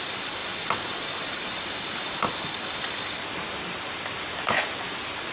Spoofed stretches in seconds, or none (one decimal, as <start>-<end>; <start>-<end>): 0.4-3.6